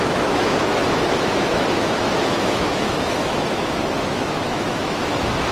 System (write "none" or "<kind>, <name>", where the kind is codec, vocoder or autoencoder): autoencoder, DAC-VAE